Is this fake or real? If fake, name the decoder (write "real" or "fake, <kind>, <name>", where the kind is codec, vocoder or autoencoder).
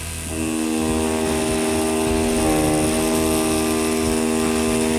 real